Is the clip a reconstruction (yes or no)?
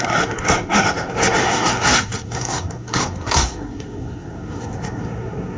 yes